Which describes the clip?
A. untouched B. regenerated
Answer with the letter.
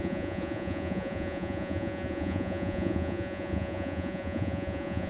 B